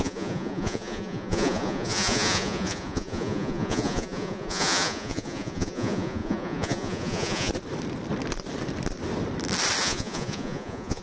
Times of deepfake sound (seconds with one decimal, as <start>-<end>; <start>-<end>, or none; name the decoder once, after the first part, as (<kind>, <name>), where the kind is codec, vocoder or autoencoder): 0.0-7.5 (vocoder, Vocos); 9.8-11.0